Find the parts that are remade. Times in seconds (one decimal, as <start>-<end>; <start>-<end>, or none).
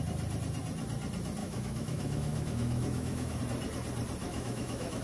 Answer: 1.4-3.4; 4.2-5.0